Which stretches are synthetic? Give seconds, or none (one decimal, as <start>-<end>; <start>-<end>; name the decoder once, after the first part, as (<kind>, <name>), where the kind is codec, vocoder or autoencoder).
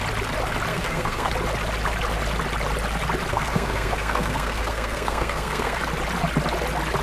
0.7-1.3 (codec, SNAC); 3.3-5.8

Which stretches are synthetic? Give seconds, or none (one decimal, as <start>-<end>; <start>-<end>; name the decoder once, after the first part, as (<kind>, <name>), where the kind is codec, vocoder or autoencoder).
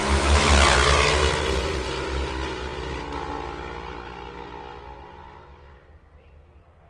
none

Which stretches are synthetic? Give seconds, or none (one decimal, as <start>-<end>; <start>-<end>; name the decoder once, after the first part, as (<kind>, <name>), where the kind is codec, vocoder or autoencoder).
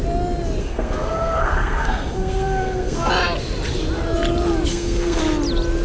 0.6-3.1 (codec, SNAC); 4.7-5.2